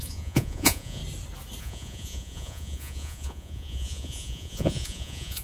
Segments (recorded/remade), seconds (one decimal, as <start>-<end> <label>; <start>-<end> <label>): 0.0-1.0 remade; 1.0-1.6 recorded; 1.6-5.4 remade